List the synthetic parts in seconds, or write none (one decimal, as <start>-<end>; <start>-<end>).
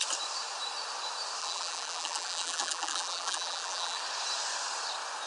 1.4-4.0